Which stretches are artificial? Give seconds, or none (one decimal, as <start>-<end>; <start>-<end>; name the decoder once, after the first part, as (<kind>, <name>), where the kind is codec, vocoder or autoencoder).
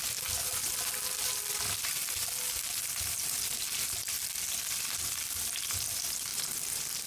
6.3-7.1 (vocoder, BigVGAN v2)